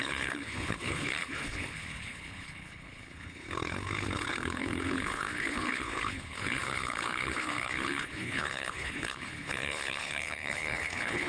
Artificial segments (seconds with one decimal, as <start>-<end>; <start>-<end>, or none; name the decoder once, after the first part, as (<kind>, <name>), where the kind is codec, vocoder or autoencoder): 0.0-11.3 (codec, HILCodec)